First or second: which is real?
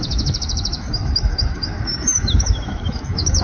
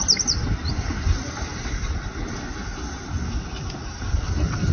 second